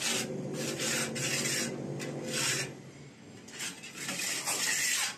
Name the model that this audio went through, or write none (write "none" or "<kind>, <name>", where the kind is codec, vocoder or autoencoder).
none